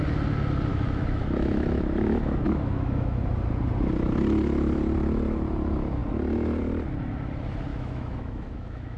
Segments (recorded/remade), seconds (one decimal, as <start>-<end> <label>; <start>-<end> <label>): 0.0-0.7 recorded; 0.7-3.2 remade; 3.2-7.7 recorded; 7.7-9.0 remade